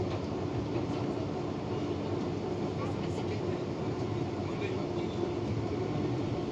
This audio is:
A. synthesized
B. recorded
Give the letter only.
B